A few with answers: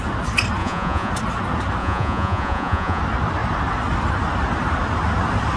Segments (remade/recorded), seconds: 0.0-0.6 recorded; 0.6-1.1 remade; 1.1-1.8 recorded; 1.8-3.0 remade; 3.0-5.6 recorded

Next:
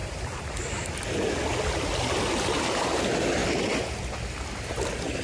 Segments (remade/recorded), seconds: 0.0-5.2 recorded

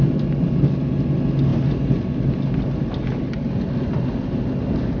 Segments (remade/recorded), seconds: 0.0-5.0 recorded

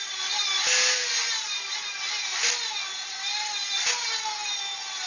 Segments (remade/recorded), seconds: 0.0-5.1 recorded